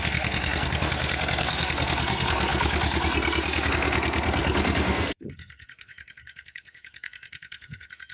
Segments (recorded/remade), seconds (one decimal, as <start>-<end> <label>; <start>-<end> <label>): 0.0-8.1 remade

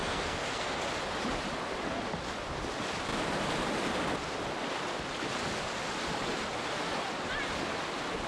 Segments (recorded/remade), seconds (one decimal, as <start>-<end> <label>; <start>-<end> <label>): 0.0-0.8 remade; 0.8-8.3 recorded

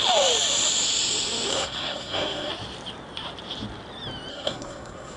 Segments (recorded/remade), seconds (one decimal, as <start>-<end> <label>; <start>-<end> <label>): 0.0-1.5 recorded; 1.5-2.5 remade; 2.5-4.3 recorded; 4.3-5.2 remade

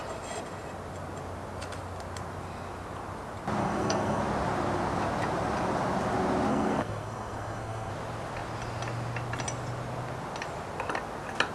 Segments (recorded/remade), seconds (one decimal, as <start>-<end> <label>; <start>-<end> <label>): 0.0-3.6 recorded; 3.6-4.2 remade; 4.2-6.5 recorded; 6.5-7.9 remade; 7.9-11.5 recorded

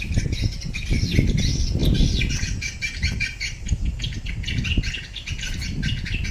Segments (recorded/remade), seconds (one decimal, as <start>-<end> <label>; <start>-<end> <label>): 0.0-6.3 recorded

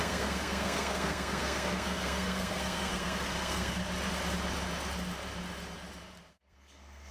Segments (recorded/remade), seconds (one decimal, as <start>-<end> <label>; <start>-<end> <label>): 0.0-3.8 remade; 3.8-6.3 recorded; 6.3-7.1 remade